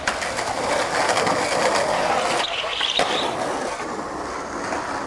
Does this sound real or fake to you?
real